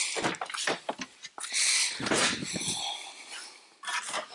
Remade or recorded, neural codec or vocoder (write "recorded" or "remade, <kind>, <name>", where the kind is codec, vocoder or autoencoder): recorded